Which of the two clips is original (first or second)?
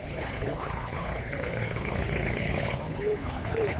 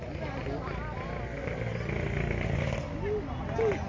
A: second